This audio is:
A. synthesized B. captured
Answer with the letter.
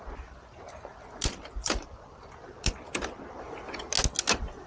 B